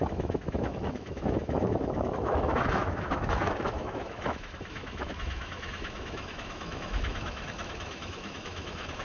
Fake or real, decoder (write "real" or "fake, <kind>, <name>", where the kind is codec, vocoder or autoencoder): fake, autoencoder, DAC-VAE